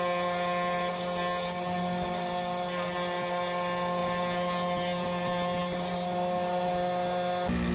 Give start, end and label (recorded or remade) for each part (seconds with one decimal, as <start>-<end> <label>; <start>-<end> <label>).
0.0-7.7 recorded